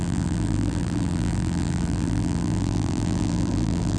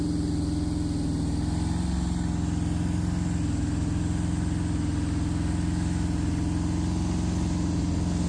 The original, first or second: second